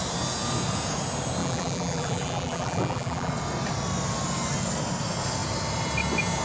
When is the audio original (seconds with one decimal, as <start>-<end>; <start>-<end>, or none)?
0.0-1.4; 3.3-6.4